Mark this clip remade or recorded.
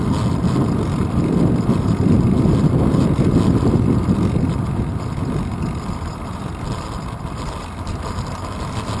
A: remade